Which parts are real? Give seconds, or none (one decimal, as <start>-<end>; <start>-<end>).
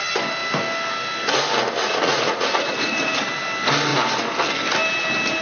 0.0-1.8; 3.1-5.4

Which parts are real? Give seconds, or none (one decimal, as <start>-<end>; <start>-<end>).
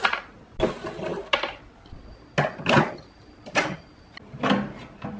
0.0-5.2